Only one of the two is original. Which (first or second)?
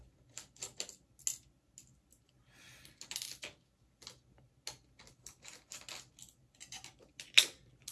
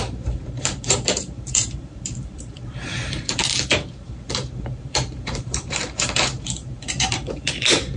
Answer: first